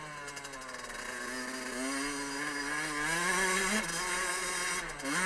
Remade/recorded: recorded